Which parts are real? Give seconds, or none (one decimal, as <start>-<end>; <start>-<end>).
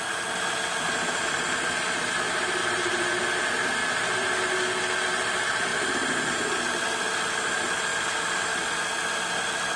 0.0-2.6; 3.1-9.8